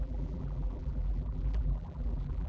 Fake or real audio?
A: fake